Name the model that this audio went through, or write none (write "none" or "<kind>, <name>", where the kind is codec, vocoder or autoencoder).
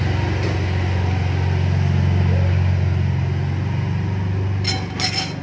none